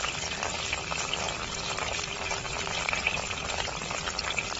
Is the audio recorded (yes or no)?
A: no